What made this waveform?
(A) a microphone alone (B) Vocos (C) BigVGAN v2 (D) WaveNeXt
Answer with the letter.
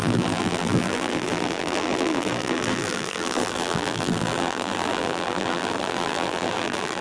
C